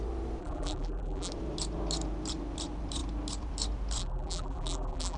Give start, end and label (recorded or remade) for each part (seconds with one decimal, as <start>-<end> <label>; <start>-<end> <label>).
0.0-0.4 recorded; 0.4-1.3 remade; 1.3-4.0 recorded; 4.0-5.2 remade